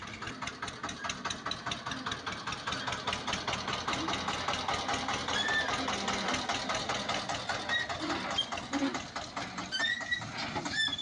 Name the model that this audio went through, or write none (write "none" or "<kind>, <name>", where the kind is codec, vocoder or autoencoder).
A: none